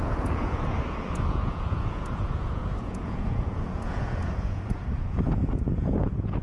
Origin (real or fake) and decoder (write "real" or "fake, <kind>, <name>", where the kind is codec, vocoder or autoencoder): fake, vocoder, Vocos